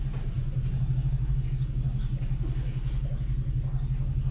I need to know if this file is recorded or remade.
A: recorded